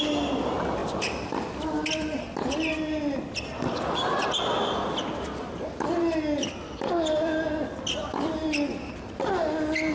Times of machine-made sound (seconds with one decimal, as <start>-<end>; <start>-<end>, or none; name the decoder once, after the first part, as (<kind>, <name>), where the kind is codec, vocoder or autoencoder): none